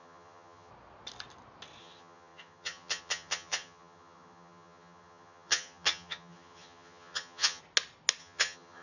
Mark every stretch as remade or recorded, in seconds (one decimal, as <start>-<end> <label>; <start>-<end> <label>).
0.0-0.7 remade; 0.7-1.8 recorded; 1.8-7.6 remade; 7.6-8.2 recorded; 8.2-8.8 remade

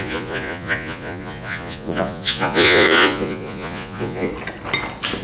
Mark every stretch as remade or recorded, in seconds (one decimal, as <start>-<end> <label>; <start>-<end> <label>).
0.0-4.3 remade; 4.3-5.2 recorded

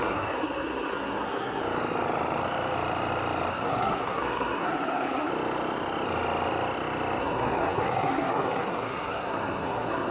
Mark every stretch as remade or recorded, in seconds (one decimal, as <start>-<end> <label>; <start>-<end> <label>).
0.0-1.6 remade; 1.6-3.5 recorded; 3.5-5.3 remade; 5.3-7.2 recorded; 7.2-10.1 remade

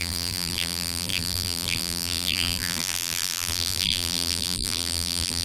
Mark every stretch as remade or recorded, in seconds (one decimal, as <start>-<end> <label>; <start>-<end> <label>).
0.0-5.4 remade

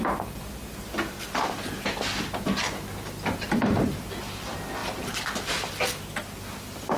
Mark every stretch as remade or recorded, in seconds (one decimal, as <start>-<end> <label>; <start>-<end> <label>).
0.0-7.0 recorded

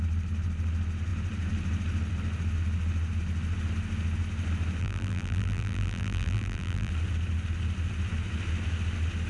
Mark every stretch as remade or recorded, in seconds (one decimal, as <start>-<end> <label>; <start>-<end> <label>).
0.0-4.8 recorded; 4.8-6.9 remade; 6.9-9.3 recorded

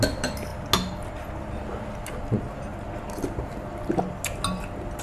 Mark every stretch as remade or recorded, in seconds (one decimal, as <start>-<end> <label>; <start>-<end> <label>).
0.0-5.0 recorded

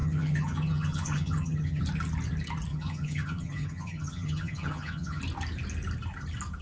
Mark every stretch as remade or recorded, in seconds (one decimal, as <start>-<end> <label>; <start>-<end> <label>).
0.0-1.8 remade; 1.8-2.7 recorded; 2.7-5.2 remade; 5.2-6.6 recorded